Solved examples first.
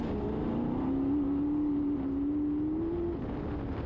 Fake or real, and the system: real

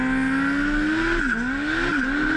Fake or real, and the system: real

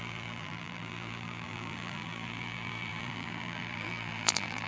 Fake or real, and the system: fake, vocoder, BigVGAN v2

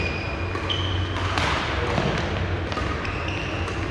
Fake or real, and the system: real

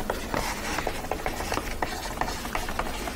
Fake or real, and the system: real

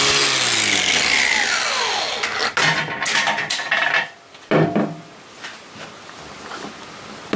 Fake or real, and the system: real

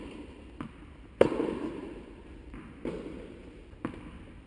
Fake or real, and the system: real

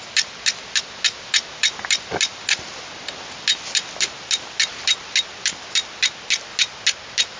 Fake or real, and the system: real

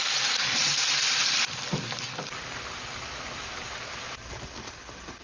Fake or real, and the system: fake, vocoder, BigVGAN v2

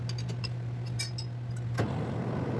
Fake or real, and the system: real